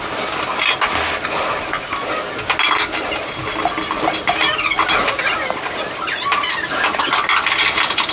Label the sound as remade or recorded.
recorded